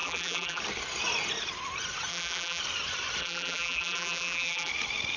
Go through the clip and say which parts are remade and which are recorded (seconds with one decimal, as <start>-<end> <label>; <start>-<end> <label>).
0.0-0.6 remade; 0.6-2.1 recorded; 2.1-2.6 remade; 2.6-3.2 recorded; 3.2-4.7 remade; 4.7-5.2 recorded